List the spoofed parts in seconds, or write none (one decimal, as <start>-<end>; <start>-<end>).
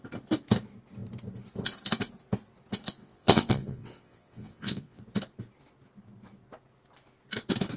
3.0-5.0